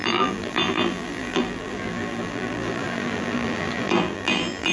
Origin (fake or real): fake